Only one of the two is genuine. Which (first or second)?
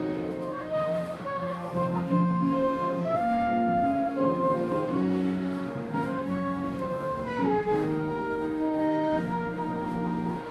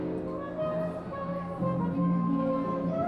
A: second